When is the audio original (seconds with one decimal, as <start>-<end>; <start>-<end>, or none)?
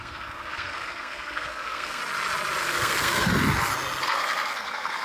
2.0-2.6; 3.3-4.0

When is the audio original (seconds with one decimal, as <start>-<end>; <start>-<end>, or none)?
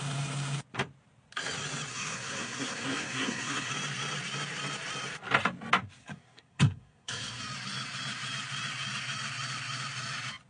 0.0-1.9; 3.7-6.0; 7.4-10.5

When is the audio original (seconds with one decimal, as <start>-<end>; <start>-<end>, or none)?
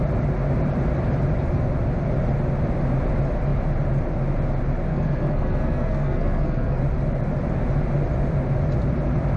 0.0-4.9; 6.8-9.4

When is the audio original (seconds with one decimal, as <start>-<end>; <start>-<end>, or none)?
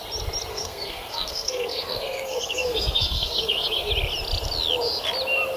0.0-0.5; 3.9-5.6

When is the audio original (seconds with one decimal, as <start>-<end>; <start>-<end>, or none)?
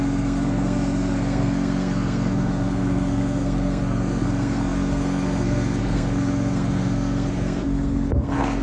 none